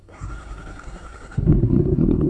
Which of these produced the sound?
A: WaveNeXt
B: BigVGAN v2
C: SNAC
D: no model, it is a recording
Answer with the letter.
C